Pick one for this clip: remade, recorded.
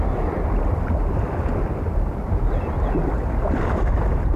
remade